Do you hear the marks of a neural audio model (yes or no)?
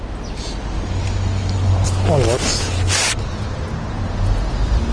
no